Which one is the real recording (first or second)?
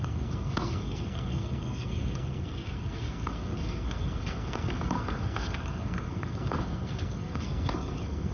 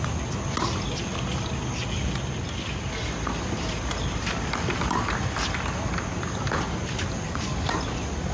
second